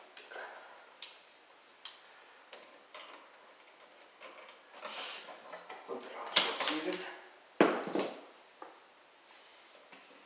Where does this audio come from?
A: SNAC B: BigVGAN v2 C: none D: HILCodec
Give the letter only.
C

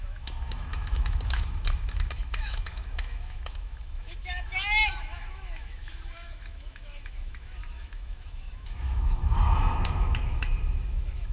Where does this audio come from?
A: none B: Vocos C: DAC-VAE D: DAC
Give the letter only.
C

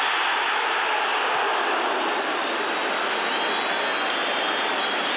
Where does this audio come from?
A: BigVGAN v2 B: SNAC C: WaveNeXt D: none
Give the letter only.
D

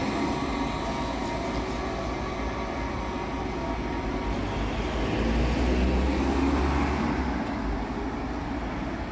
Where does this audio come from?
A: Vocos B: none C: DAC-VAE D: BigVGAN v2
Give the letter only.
B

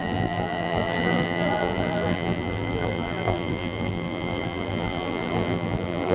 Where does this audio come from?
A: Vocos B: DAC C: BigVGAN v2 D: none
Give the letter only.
C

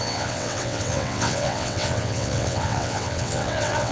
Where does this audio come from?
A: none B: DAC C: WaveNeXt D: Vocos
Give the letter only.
C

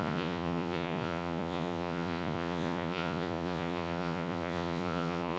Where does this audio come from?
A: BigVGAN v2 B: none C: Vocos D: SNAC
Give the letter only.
C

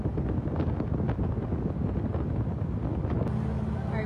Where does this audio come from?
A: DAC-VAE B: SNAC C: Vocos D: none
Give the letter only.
D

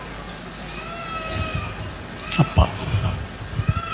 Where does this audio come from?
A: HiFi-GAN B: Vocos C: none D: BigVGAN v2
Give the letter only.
C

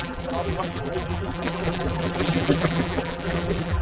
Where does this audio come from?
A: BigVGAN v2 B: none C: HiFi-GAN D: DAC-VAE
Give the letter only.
A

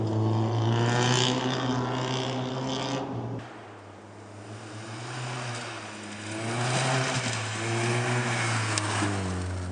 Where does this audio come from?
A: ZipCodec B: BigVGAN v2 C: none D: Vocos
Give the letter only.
C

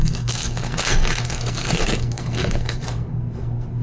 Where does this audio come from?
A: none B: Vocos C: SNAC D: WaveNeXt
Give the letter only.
C